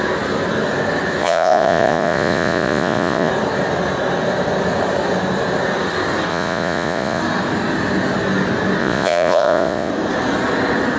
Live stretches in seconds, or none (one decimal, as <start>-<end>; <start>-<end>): 0.0-1.2; 3.3-6.3; 7.2-8.8; 9.9-11.0